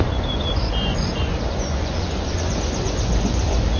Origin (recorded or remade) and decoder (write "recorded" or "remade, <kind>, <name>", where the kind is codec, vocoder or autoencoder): remade, vocoder, Vocos